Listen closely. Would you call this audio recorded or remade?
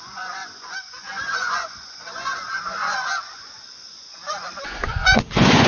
remade